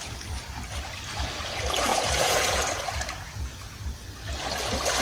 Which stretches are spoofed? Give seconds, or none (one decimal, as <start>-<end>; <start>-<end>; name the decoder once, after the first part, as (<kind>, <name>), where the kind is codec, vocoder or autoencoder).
1.9-2.8 (vocoder, Vocos)